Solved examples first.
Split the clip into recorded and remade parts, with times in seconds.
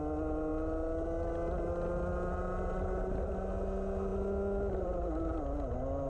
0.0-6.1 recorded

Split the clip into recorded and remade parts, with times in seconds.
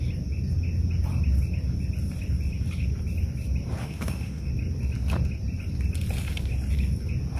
0.0-3.8 recorded; 3.8-4.5 remade; 4.5-7.4 recorded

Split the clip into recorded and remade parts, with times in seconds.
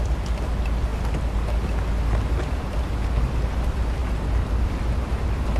0.0-0.9 remade; 0.9-3.5 recorded; 3.5-4.0 remade; 4.0-4.6 recorded; 4.6-5.6 remade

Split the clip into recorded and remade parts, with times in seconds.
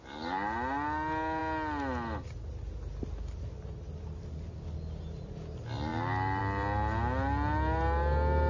0.0-8.5 recorded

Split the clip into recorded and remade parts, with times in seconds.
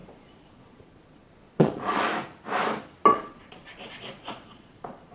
0.0-2.1 remade; 2.1-3.1 recorded; 3.1-5.1 remade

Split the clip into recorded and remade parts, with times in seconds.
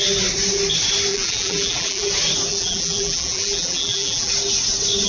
0.0-1.1 recorded; 1.1-2.1 remade; 2.1-2.5 recorded; 2.5-4.3 remade; 4.3-5.1 recorded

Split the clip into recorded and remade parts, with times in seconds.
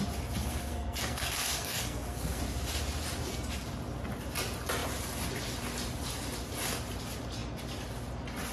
0.0-0.4 recorded; 0.4-2.4 remade; 2.4-8.5 recorded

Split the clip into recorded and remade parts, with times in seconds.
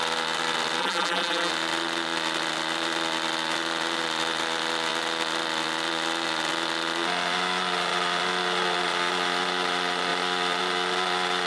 0.0-0.8 recorded; 0.8-1.5 remade; 1.5-11.5 recorded